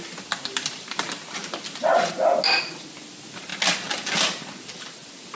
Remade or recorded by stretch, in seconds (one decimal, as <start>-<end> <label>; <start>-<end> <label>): 0.0-5.4 recorded